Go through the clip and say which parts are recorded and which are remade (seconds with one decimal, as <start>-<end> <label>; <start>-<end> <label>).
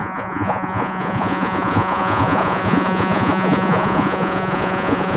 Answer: 0.0-5.2 remade